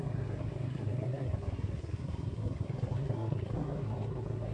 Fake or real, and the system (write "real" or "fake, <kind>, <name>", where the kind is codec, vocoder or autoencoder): fake, codec, SNAC